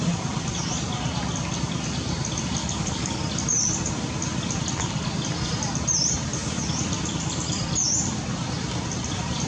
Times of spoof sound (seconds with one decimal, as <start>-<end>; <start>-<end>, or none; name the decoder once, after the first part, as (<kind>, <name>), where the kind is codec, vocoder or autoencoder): 2.6-3.2 (codec, DAC)